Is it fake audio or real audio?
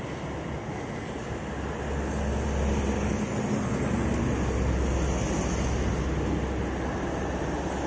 real